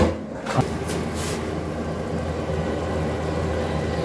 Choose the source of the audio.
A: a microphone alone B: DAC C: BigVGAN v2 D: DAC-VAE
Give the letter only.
A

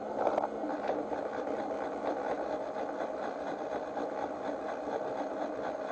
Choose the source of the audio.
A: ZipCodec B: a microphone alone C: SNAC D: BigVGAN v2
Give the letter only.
B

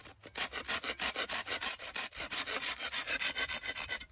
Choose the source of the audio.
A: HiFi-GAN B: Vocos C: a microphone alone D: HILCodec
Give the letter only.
C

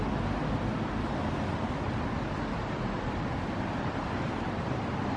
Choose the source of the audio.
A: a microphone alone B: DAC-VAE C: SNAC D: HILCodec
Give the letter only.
A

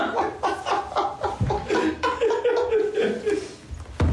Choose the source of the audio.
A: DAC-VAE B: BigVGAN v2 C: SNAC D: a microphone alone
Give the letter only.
D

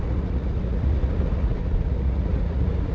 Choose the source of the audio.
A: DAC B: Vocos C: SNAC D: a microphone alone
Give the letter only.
B